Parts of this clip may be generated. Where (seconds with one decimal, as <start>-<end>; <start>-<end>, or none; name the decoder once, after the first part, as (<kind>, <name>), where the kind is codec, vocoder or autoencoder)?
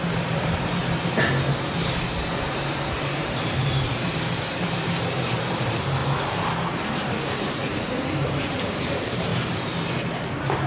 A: 0.0-0.8 (vocoder, BigVGAN v2); 2.3-6.0; 6.8-9.3; 10.2-10.7